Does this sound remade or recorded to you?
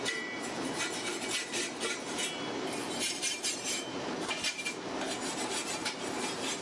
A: remade